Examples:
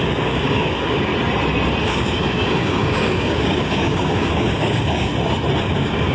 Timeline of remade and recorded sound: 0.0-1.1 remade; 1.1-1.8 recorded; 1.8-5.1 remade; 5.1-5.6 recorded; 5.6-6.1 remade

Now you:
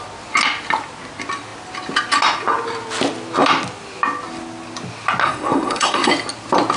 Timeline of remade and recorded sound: 0.0-5.2 recorded; 5.2-6.1 remade; 6.1-6.8 recorded

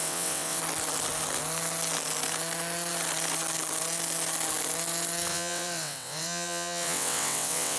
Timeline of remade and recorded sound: 0.0-0.6 remade; 0.6-5.3 recorded; 5.3-7.8 remade

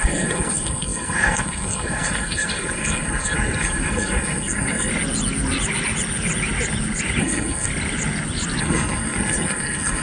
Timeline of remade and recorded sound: 0.0-4.9 remade; 4.9-7.2 recorded; 7.2-7.7 remade; 7.7-8.6 recorded; 8.6-10.0 remade

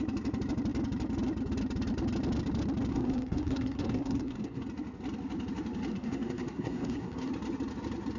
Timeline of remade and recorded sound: 0.0-2.9 recorded; 2.9-4.6 remade; 4.6-5.9 recorded; 5.9-7.3 remade; 7.3-8.2 recorded

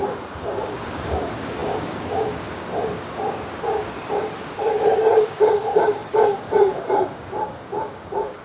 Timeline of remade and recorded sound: 0.0-8.4 remade